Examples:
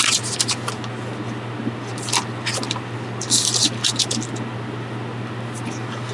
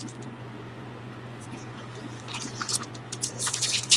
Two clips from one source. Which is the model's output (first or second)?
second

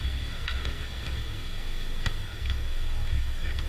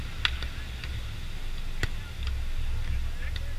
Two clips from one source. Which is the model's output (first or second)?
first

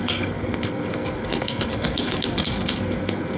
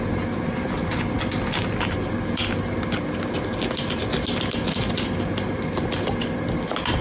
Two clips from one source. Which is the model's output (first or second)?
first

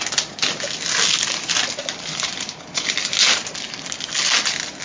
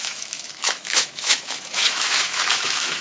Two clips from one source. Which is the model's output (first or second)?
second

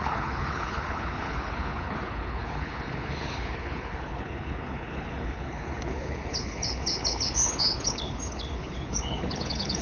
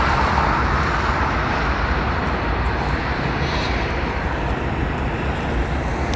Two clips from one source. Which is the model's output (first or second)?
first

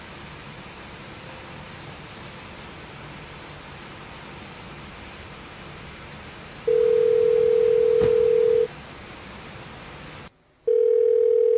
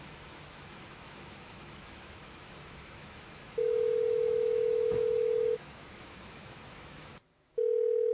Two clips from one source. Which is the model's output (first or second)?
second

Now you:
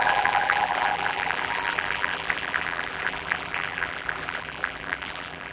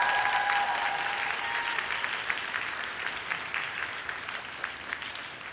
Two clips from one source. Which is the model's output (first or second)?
first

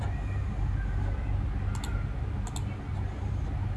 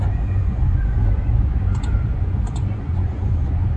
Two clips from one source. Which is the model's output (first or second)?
second